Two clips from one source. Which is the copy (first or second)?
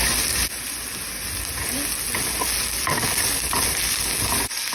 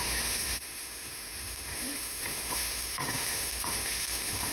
second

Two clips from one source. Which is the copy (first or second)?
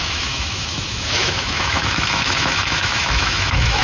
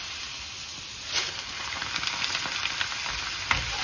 first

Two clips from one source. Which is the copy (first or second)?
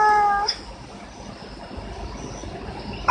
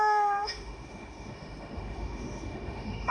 second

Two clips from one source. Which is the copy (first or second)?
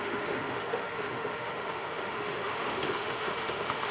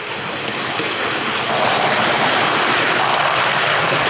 first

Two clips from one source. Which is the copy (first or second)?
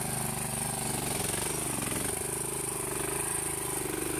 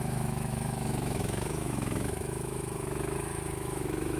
second